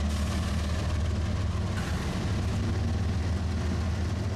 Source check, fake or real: real